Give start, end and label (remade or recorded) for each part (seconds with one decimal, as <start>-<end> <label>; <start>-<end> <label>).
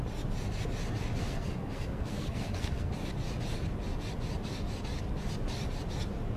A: 0.0-1.2 recorded; 1.2-2.9 remade; 2.9-6.4 recorded